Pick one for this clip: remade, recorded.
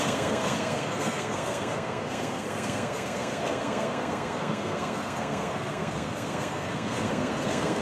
remade